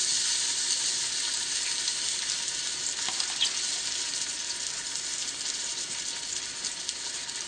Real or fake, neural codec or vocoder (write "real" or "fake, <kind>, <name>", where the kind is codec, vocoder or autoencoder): real